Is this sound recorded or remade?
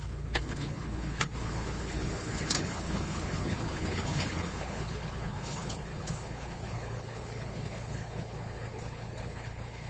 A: remade